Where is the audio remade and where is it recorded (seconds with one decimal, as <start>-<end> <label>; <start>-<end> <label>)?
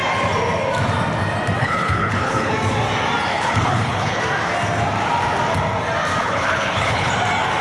0.0-1.6 recorded; 1.6-2.5 remade; 2.5-3.3 recorded; 3.3-4.2 remade; 4.2-6.2 recorded; 6.2-7.1 remade; 7.1-7.6 recorded